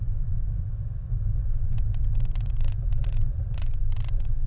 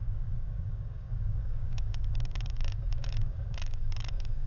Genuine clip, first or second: first